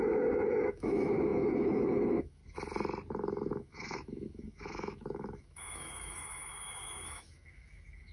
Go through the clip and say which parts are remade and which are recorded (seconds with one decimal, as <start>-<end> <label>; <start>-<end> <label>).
0.0-2.4 remade; 2.4-3.5 recorded; 3.5-8.1 remade